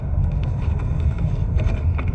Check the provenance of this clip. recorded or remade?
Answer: remade